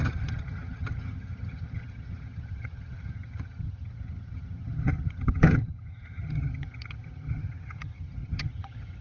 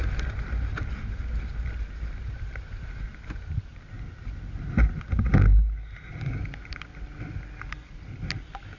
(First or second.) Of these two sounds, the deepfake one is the first